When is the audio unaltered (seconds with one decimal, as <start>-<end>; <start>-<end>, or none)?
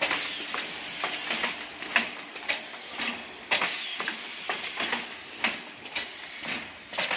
0.0-7.2